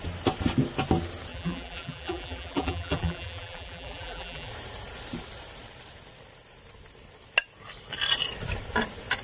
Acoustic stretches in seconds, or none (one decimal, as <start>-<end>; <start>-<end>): 0.0-1.3; 4.5-9.2